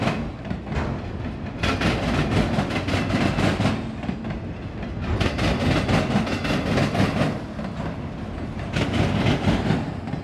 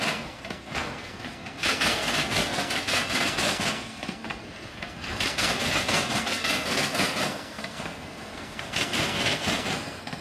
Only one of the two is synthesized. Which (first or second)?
second